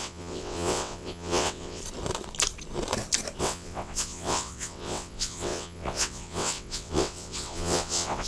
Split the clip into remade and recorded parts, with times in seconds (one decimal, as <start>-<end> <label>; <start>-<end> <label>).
0.0-1.8 remade; 1.8-3.4 recorded; 3.4-8.3 remade